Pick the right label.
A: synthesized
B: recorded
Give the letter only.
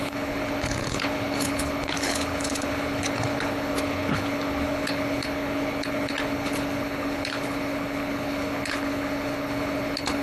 A